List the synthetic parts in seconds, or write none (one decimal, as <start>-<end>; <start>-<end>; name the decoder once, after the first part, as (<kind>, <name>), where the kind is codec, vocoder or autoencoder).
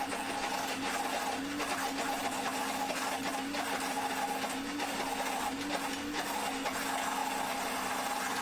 none